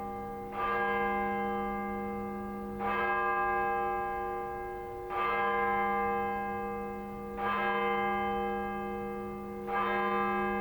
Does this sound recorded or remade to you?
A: recorded